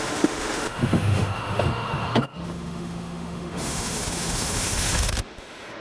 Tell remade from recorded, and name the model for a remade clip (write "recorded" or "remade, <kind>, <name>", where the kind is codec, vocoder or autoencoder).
remade, autoencoder, DAC-VAE